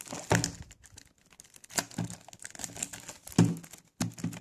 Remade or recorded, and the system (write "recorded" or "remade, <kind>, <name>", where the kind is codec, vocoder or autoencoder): recorded